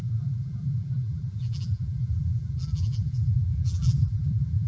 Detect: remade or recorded remade